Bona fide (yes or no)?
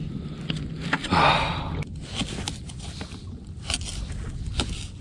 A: yes